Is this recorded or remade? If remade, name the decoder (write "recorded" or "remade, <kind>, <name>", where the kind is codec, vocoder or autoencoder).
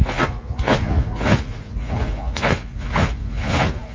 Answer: remade, vocoder, Vocos